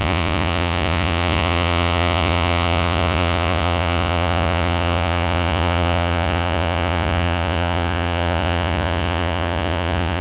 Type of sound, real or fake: fake